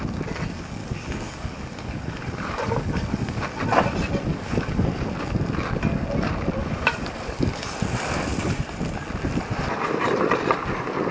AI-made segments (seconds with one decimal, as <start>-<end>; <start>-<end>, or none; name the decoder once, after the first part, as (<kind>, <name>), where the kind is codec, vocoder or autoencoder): 0.8-3.4 (codec, DAC); 4.3-5.0; 6.6-7.6